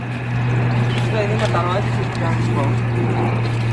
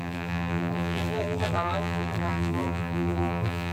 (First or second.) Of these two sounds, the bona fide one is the first